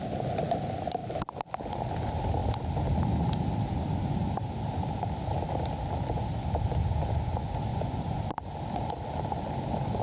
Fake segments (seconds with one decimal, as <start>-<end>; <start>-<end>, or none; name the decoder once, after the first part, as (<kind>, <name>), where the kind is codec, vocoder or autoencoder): 7.7-8.2 (vocoder, Vocos)